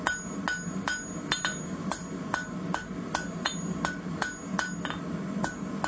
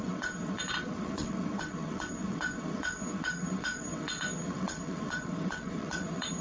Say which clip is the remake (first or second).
second